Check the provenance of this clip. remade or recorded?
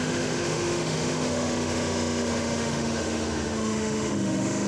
remade